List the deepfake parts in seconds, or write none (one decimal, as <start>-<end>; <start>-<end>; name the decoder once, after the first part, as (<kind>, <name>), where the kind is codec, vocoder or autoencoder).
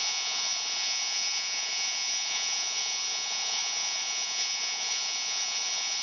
0.0-6.0 (vocoder, Vocos)